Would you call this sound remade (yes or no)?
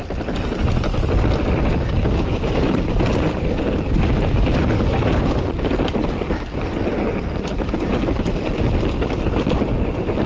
no